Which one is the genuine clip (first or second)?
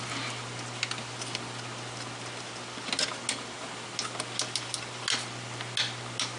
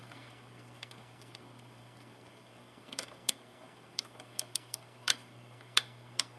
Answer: first